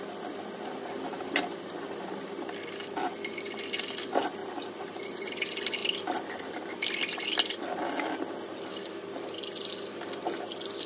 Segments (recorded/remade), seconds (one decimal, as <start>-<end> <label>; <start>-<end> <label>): 0.0-10.9 recorded